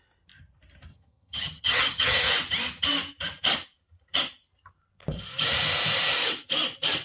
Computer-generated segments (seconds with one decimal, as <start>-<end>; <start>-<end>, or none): 0.9-2.3